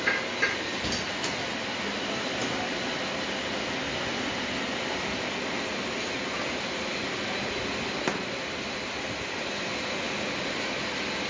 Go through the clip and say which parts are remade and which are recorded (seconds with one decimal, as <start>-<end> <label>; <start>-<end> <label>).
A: 0.0-11.3 recorded